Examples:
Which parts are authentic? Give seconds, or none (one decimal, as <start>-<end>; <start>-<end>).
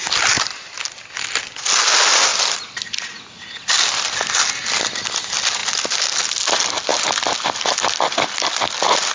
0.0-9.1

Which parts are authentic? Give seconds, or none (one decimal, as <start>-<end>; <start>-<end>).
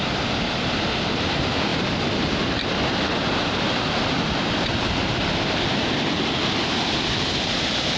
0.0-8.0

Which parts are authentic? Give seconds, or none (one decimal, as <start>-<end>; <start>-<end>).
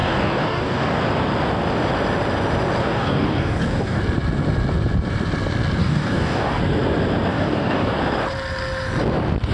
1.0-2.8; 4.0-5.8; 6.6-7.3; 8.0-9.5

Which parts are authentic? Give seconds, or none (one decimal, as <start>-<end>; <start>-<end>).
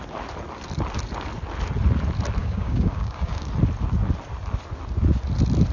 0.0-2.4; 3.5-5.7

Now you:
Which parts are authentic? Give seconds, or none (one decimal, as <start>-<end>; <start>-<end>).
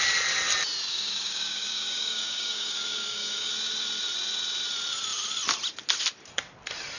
0.0-0.9; 3.5-7.0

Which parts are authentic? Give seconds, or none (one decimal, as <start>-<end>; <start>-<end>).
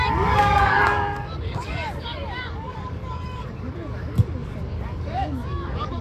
none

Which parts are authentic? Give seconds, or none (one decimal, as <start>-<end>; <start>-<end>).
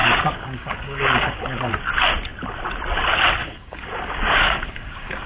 1.7-3.4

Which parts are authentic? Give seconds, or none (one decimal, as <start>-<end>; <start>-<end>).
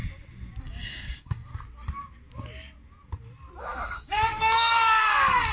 0.0-0.6; 1.5-3.6